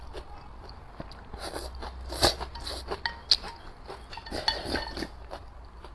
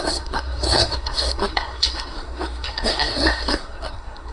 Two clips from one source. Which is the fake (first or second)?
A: second